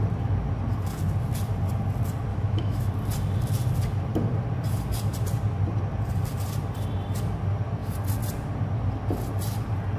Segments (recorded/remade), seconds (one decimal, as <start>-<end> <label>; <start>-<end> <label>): 0.0-2.3 recorded; 2.3-2.9 remade; 2.9-10.0 recorded